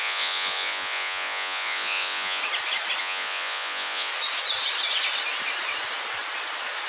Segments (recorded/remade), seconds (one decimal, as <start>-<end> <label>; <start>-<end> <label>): 0.0-2.4 remade; 2.4-3.0 recorded; 3.0-4.1 remade; 4.1-6.9 recorded